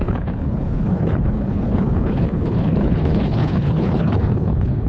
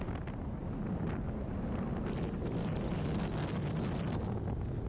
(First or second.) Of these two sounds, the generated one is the first